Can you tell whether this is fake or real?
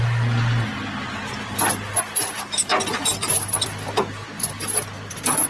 real